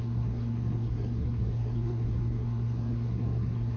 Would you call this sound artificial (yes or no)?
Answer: yes